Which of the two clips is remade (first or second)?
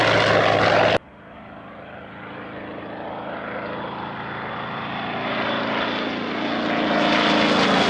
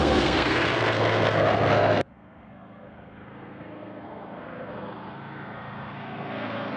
second